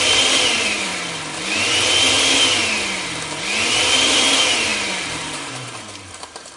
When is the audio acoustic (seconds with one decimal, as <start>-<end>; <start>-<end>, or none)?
0.9-3.9